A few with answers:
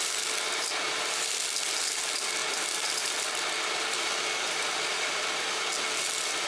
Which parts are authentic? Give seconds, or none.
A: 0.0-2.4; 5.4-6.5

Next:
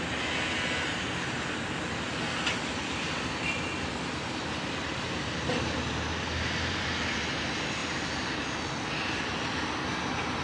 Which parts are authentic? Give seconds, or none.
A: 0.0-10.4

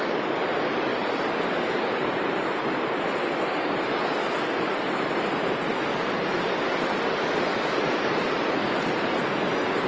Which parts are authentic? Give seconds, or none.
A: 0.0-0.9; 2.5-9.9

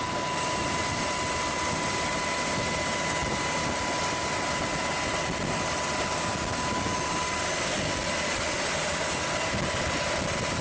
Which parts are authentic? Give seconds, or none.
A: 0.0-10.6

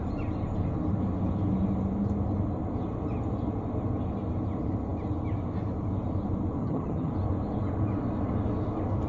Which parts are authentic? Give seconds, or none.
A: 0.0-6.6; 7.1-9.1

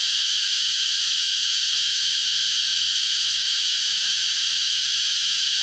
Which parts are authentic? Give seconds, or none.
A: none

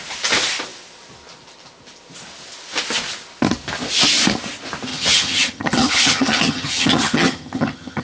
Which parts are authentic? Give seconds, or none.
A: 0.0-4.9